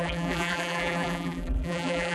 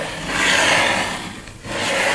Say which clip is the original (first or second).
second